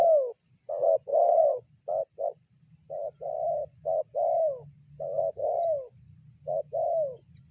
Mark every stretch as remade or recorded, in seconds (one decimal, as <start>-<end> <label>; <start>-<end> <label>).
0.0-7.5 recorded